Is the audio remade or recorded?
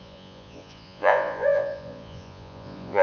remade